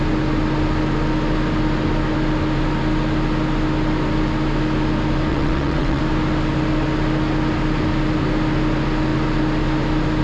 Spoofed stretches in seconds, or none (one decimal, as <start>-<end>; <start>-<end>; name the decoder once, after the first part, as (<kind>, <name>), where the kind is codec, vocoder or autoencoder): 5.3-6.0 (vocoder, WaveNeXt)